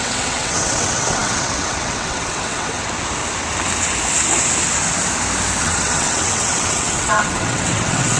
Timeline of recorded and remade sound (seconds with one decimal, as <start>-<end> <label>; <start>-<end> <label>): 0.0-2.8 remade; 2.8-5.6 recorded; 5.6-8.2 remade